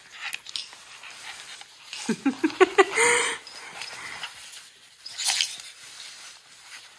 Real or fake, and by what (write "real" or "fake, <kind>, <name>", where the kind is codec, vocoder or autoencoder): real